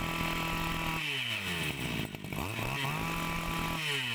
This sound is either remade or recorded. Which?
recorded